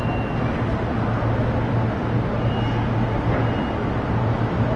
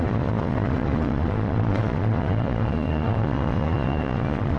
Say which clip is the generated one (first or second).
second